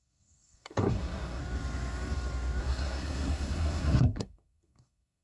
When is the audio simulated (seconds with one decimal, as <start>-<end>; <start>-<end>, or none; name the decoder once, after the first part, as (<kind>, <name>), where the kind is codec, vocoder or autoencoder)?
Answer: 0.0-1.4 (codec, SNAC); 2.6-5.2